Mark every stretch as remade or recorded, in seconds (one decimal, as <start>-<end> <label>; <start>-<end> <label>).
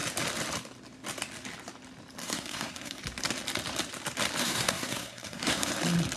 0.0-2.2 recorded; 2.2-3.0 remade; 3.0-4.4 recorded; 4.4-5.7 remade; 5.7-6.2 recorded